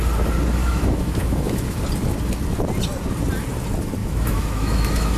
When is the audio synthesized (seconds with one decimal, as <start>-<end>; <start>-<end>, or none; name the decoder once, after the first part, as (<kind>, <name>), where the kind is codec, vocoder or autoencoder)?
0.6-1.8 (autoencoder, DAC-VAE); 4.0-5.2